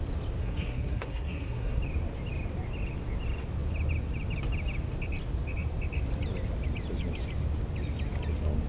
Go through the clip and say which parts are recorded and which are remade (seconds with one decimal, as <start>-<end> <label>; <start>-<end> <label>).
0.0-0.4 recorded; 0.4-1.8 remade; 1.8-8.7 recorded

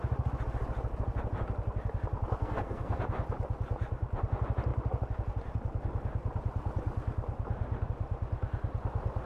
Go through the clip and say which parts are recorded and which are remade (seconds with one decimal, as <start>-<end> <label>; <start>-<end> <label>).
0.0-2.4 recorded; 2.4-3.0 remade; 3.0-9.3 recorded

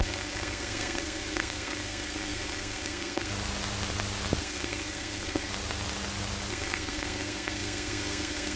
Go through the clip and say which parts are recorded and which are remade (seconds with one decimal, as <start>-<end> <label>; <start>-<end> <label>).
0.0-3.3 remade; 3.3-4.4 recorded; 4.4-5.5 remade; 5.5-6.5 recorded; 6.5-8.6 remade

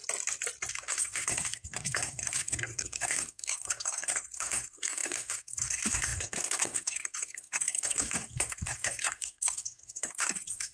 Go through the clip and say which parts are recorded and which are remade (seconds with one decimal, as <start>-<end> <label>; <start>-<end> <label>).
0.0-0.7 recorded; 0.7-10.7 remade

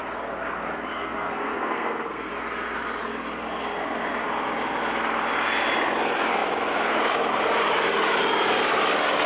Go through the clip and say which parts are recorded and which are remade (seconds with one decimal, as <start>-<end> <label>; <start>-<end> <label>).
0.0-0.9 recorded; 0.9-2.3 remade; 2.3-9.3 recorded

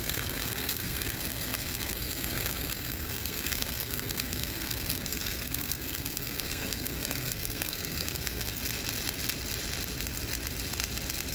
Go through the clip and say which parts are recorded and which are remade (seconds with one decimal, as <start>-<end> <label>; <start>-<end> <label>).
0.0-8.6 remade; 8.6-11.3 recorded